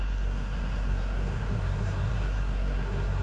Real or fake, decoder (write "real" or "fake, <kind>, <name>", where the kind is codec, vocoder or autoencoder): fake, codec, SNAC